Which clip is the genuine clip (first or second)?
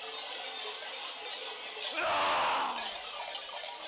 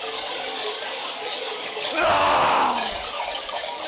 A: first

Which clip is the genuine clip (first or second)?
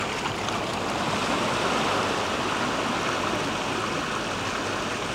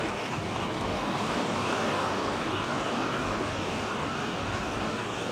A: first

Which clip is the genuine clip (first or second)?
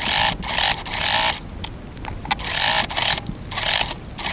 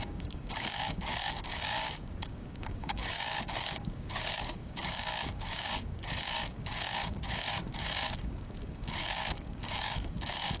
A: first